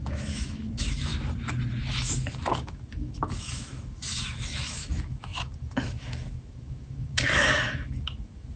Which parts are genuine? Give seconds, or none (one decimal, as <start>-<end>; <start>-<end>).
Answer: 1.1-1.8